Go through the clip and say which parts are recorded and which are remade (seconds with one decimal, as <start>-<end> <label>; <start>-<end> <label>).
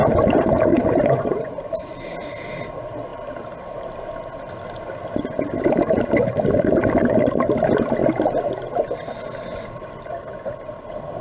0.0-0.7 recorded; 0.7-1.5 remade; 1.5-11.2 recorded